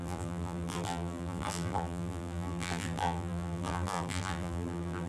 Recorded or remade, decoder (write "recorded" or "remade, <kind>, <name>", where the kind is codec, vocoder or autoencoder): remade, vocoder, BigVGAN v2